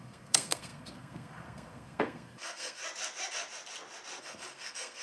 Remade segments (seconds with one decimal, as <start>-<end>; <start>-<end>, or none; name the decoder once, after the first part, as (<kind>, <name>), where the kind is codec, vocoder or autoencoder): 0.0-2.8 (codec, SNAC); 4.2-5.0